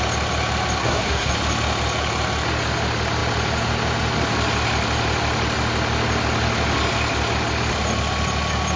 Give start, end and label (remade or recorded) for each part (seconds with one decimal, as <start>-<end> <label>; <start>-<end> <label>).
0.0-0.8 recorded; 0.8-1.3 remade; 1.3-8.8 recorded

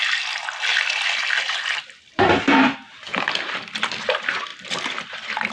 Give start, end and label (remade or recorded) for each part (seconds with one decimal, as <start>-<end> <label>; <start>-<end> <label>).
0.0-5.5 recorded

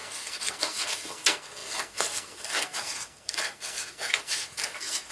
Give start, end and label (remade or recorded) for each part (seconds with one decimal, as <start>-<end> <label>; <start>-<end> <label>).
0.0-5.1 remade

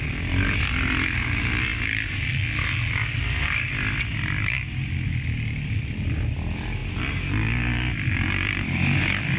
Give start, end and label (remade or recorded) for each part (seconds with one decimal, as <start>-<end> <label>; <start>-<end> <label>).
0.0-9.4 recorded

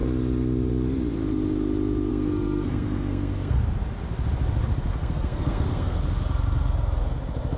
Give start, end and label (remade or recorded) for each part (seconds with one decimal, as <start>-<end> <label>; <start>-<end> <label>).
0.0-2.1 recorded; 2.1-3.6 remade; 3.6-4.9 recorded; 4.9-6.0 remade; 6.0-7.6 recorded

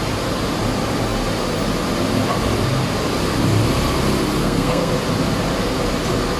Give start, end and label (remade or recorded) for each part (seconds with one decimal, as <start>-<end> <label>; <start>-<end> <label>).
0.0-4.4 recorded; 4.4-4.9 remade; 4.9-6.4 recorded